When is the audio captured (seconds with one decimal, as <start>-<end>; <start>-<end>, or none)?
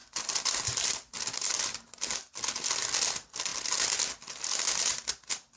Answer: 2.7-5.6